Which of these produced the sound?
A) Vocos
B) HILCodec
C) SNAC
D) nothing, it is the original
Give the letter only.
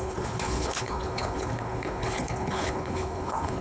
B